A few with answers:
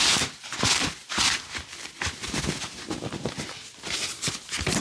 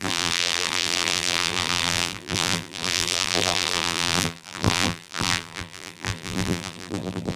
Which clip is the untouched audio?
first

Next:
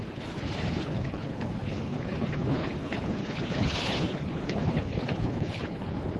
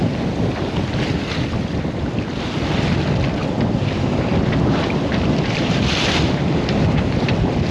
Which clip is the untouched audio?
second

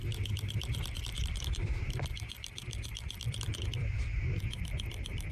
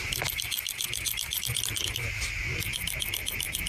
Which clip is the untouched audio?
second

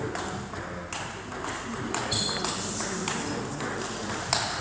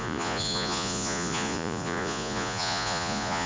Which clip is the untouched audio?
first